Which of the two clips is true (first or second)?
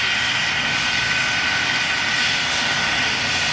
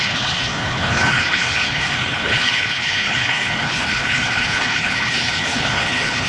first